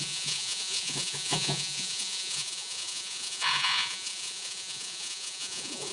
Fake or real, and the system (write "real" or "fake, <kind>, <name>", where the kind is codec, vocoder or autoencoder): fake, vocoder, Vocos